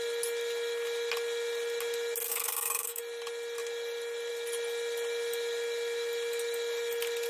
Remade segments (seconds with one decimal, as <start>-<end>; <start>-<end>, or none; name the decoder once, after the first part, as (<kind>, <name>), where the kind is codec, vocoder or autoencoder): 2.3-3.0 (codec, SNAC)